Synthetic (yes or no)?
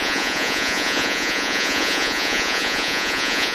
yes